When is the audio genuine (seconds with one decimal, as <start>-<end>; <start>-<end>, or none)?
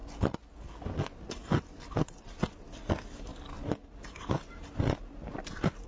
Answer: 0.0-1.6; 3.3-4.0